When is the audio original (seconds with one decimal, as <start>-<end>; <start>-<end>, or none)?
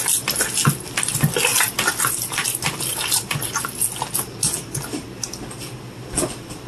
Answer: 0.0-6.7